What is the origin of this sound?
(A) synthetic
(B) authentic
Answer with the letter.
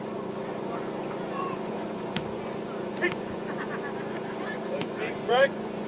A